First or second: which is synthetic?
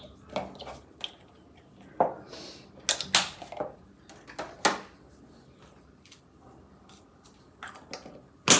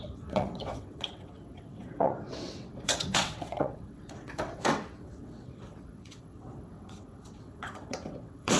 second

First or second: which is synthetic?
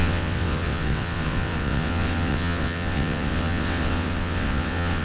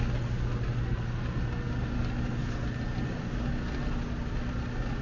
first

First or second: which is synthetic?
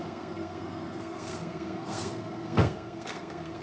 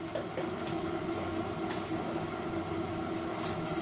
first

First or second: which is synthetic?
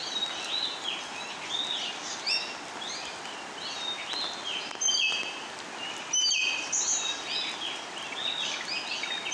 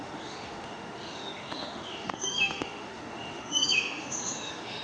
second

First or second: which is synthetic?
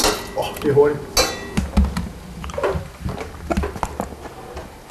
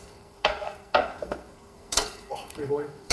second